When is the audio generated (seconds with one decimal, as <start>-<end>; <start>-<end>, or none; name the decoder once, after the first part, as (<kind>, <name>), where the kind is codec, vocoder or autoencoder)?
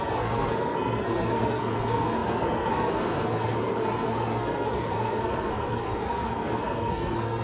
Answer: 0.0-7.4 (codec, SNAC)